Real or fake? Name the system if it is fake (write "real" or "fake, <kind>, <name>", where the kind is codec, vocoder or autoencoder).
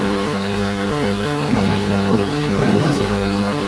fake, codec, SNAC